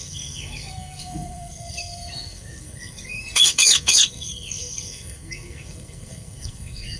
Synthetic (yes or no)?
yes